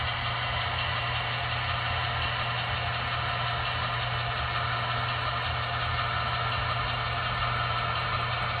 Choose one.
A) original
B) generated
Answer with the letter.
A